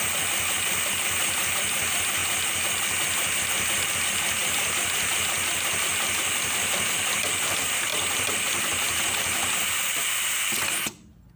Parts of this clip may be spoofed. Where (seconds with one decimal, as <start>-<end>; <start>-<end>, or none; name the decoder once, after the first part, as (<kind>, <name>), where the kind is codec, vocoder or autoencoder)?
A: none